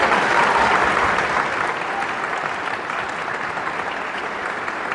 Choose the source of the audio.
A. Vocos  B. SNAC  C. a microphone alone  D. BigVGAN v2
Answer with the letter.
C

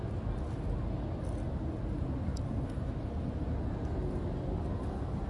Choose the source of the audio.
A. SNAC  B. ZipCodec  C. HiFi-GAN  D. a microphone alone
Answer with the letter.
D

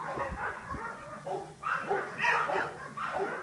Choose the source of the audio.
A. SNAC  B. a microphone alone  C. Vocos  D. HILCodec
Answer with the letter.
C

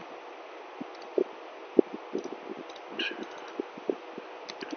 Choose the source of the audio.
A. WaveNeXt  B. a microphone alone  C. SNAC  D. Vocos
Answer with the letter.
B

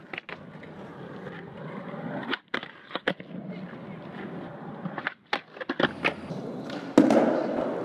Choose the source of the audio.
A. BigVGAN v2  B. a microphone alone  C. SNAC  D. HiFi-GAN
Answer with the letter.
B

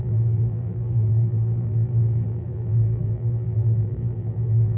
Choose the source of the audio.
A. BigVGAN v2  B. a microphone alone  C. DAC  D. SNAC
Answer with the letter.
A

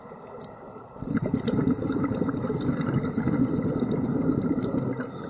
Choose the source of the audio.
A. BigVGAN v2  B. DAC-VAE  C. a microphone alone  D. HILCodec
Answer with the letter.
C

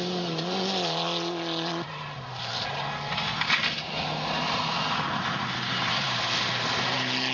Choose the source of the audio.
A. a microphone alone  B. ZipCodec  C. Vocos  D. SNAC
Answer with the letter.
A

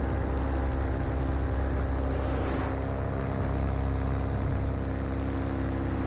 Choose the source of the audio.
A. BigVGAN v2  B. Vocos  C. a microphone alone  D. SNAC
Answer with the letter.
C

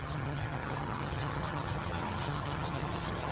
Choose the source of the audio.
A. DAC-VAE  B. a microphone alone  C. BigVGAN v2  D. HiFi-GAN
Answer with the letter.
D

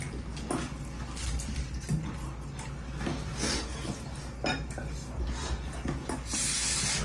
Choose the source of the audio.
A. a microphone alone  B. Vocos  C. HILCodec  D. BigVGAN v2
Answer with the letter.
A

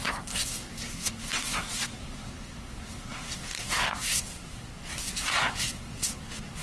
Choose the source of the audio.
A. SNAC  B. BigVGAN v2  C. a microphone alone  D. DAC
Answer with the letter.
A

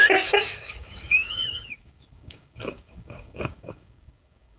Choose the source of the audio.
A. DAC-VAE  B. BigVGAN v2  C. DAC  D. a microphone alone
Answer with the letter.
C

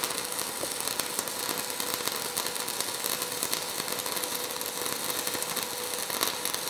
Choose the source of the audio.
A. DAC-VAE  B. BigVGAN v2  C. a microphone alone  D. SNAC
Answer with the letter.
C